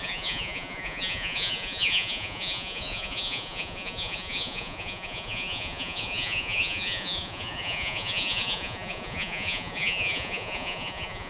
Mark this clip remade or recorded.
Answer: remade